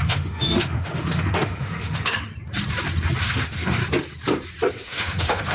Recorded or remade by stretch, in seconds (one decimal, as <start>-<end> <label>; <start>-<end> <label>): 0.0-2.3 remade; 2.3-3.2 recorded; 3.2-3.8 remade; 3.8-4.7 recorded; 4.7-5.5 remade